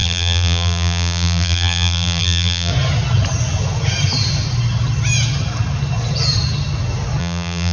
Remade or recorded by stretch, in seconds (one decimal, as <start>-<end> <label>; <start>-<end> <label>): 0.0-2.7 remade; 2.7-7.2 recorded; 7.2-7.7 remade

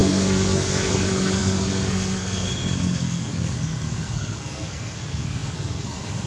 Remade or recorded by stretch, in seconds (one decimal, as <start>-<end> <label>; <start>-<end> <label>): 0.0-6.3 remade

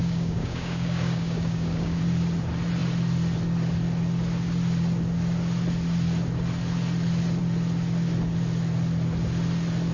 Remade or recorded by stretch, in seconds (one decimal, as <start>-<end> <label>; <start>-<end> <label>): 0.0-2.0 remade; 2.0-9.9 recorded

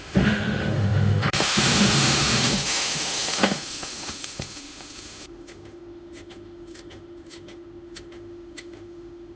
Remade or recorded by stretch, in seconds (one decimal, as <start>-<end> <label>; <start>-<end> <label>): 0.0-9.4 remade

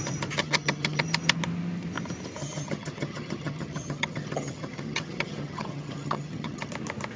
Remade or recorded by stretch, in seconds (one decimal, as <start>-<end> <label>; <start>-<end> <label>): 0.0-0.4 recorded; 0.4-1.0 remade; 1.0-2.4 recorded; 2.4-6.7 remade; 6.7-7.2 recorded

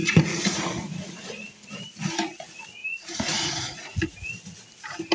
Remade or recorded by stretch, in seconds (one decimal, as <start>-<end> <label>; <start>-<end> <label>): 0.0-1.7 remade; 1.7-2.8 recorded; 2.8-4.3 remade; 4.3-5.1 recorded